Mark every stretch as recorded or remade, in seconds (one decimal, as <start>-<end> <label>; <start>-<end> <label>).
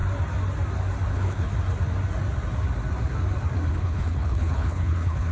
0.0-1.1 recorded; 1.1-1.5 remade; 1.5-3.7 recorded; 3.7-5.3 remade